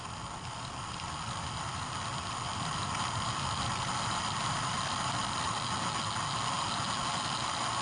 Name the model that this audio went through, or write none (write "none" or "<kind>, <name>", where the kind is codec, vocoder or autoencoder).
none